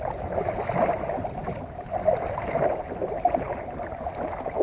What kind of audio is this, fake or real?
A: real